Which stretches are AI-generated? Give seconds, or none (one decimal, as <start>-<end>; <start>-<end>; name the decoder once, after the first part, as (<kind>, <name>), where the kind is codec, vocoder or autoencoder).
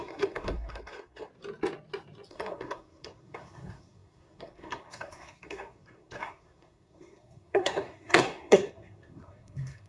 0.0-1.3 (codec, SNAC); 2.3-9.9